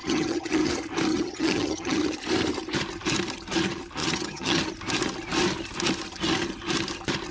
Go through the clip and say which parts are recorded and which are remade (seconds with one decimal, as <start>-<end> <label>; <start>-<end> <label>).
0.0-0.7 remade; 0.7-1.1 recorded; 1.1-2.0 remade; 2.0-4.0 recorded; 4.0-4.6 remade; 4.6-7.3 recorded